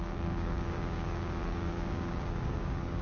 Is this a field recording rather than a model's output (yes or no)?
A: no